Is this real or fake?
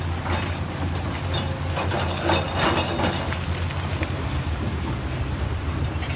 real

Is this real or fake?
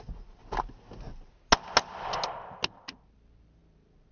real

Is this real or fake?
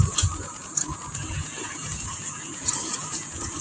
fake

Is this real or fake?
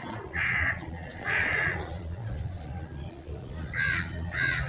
fake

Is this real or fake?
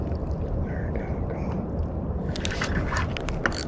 real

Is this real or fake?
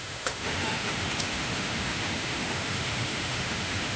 fake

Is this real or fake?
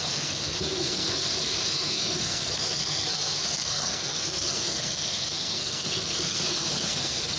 fake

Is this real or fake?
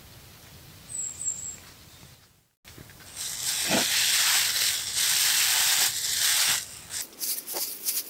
real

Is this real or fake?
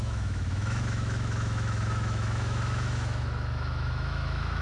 fake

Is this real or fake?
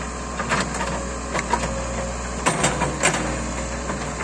real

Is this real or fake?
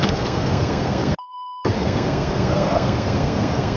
fake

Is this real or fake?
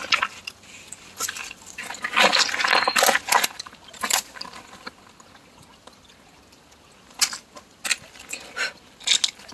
real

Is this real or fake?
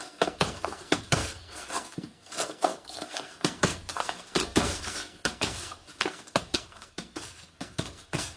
fake